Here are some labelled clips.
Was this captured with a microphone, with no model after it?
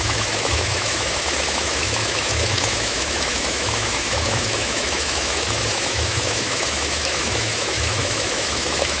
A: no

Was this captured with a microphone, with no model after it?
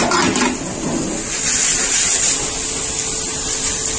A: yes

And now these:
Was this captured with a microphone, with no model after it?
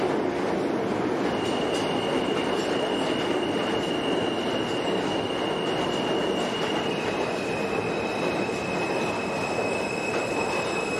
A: yes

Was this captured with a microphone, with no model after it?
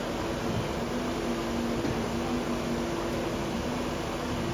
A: yes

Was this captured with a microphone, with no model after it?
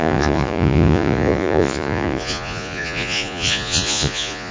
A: no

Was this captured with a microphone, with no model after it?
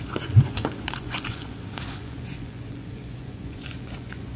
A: no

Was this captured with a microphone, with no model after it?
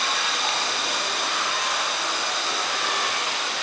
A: yes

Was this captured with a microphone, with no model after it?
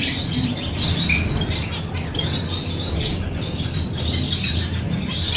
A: yes